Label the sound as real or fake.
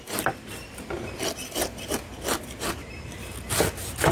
real